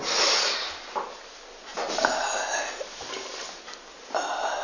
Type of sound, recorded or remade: recorded